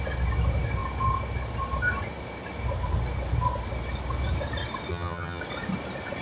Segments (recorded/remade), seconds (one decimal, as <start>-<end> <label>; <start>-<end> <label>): 0.0-4.9 recorded; 4.9-5.4 remade; 5.4-6.2 recorded